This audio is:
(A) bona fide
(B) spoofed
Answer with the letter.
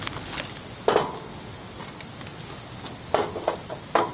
A